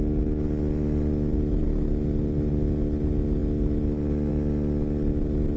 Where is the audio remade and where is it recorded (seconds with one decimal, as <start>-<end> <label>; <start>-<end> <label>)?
0.0-5.6 recorded